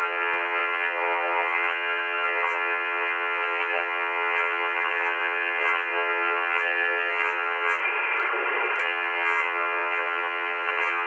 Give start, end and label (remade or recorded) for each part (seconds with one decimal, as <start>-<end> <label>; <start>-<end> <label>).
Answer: 0.0-7.8 remade; 7.8-8.8 recorded; 8.8-11.1 remade